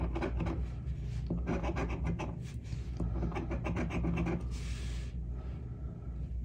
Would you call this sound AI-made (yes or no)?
no